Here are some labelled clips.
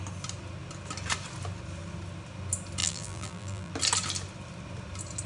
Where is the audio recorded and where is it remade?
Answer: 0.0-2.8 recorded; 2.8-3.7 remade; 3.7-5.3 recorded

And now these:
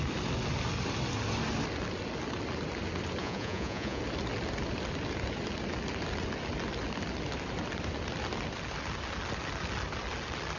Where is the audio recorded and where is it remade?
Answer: 0.0-3.2 recorded; 3.2-4.0 remade; 4.0-10.6 recorded

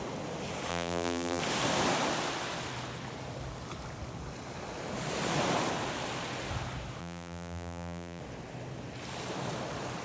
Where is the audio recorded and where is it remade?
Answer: 0.0-0.7 recorded; 0.7-1.4 remade; 1.4-7.0 recorded; 7.0-8.2 remade; 8.2-10.0 recorded

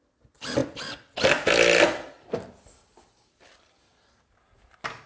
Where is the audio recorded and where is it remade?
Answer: 0.0-5.1 recorded

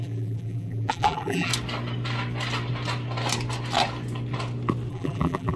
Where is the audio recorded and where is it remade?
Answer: 0.0-1.5 remade; 1.5-4.9 recorded; 4.9-5.6 remade